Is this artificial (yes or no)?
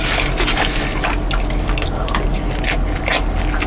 no